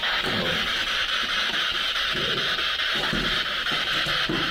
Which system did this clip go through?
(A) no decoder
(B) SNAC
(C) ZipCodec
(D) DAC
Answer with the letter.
A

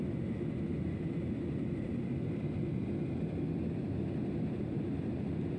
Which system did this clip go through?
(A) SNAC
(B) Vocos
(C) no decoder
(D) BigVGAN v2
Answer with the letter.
C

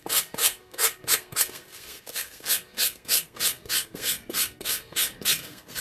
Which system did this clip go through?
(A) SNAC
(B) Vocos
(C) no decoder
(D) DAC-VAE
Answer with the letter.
A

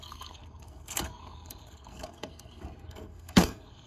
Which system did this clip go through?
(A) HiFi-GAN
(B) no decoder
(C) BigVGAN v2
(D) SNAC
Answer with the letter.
D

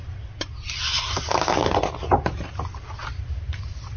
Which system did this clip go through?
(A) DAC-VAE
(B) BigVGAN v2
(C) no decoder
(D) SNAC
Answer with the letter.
C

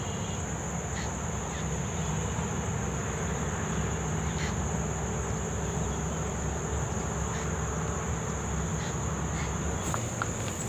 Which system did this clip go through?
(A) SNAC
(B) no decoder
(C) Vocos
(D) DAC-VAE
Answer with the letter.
B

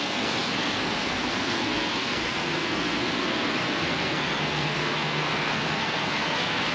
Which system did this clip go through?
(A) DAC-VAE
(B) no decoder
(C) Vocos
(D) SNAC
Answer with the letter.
D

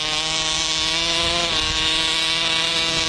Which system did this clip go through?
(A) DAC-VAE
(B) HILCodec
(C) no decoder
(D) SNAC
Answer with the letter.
C